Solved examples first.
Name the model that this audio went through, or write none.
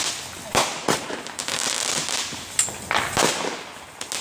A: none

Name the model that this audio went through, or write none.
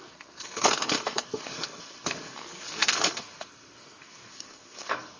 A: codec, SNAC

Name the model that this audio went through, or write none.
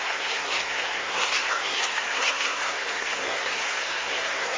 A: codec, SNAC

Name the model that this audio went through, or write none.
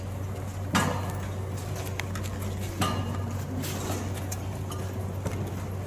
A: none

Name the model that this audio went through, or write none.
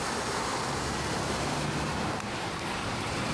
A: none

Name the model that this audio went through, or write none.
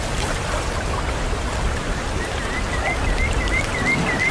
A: none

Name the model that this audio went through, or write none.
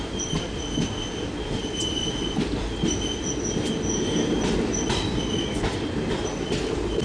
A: none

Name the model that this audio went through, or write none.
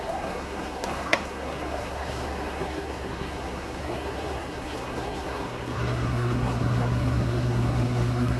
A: codec, SNAC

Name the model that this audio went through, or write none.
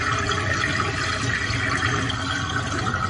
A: none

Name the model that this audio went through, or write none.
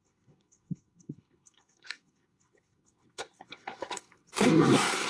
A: codec, SNAC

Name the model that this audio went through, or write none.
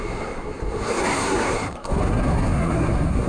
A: codec, SNAC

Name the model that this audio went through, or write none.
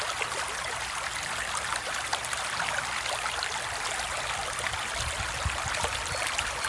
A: none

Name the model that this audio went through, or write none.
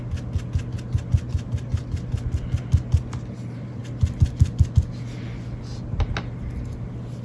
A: none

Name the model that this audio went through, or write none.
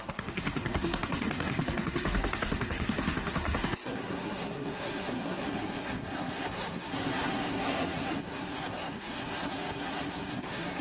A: codec, SNAC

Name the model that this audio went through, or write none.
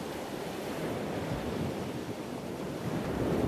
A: none